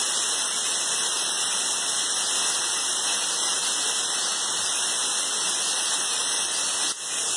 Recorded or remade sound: recorded